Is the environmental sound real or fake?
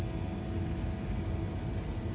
real